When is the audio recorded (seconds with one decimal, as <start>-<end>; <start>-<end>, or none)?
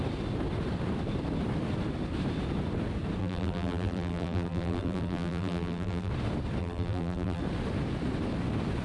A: 0.0-3.2; 6.1-6.6; 7.4-8.8